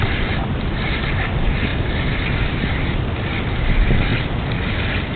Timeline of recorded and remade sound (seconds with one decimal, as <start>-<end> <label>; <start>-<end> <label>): 0.0-5.2 recorded